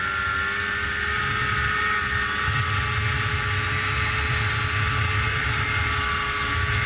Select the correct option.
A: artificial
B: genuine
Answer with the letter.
B